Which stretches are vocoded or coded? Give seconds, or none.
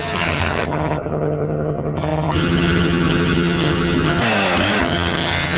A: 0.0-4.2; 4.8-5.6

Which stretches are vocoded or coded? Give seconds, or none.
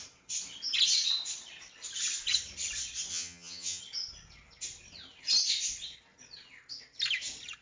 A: 3.1-3.8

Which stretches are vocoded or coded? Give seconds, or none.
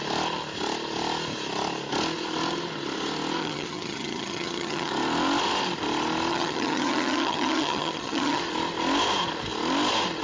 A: 3.4-4.9; 6.3-8.4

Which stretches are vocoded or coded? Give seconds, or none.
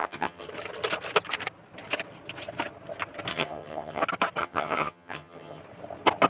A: 0.0-0.5; 3.3-4.0; 4.4-5.6